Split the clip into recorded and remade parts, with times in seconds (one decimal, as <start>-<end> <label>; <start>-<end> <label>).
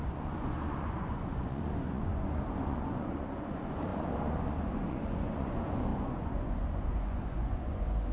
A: 0.0-8.1 remade